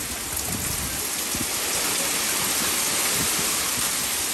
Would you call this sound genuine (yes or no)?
yes